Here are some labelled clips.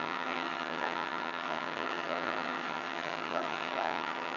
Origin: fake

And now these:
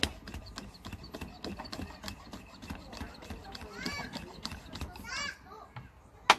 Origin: real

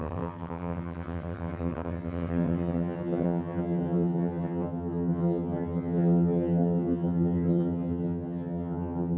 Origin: fake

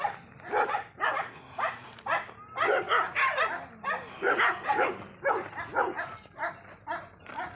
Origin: real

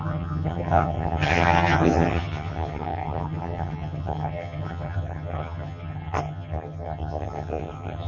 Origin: fake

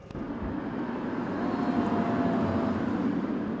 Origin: real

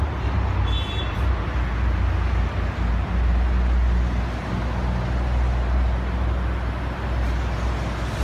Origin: real